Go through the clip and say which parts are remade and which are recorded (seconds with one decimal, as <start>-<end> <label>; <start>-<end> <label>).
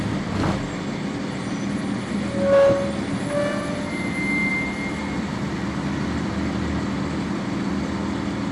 0.0-8.5 recorded